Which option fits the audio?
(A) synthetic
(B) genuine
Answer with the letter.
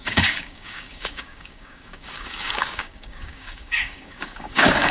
A